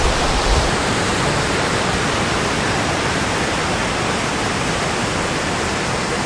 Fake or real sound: real